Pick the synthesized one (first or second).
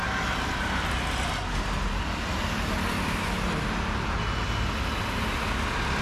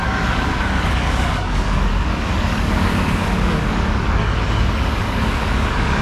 second